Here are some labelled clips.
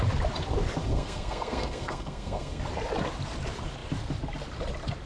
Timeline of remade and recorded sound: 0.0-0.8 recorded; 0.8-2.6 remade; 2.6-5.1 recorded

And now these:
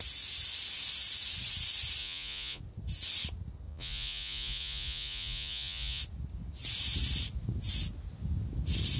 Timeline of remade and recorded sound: 0.0-2.0 recorded; 2.0-2.6 remade; 2.6-3.7 recorded; 3.7-6.0 remade; 6.0-9.0 recorded

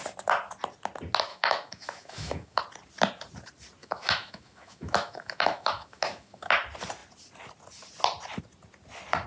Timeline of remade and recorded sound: 0.0-1.3 recorded; 1.3-2.6 remade; 2.6-3.8 recorded; 3.8-6.5 remade; 6.5-9.3 recorded